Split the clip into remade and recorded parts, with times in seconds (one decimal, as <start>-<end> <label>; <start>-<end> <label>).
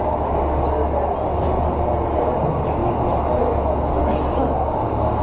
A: 0.0-5.2 recorded